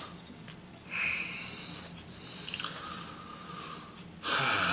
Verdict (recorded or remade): recorded